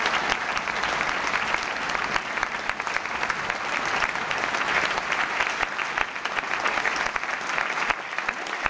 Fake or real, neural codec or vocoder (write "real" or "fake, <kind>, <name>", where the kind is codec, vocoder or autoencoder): real